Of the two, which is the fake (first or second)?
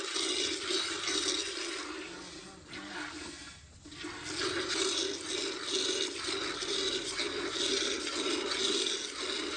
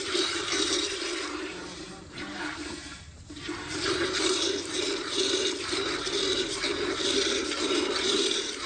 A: second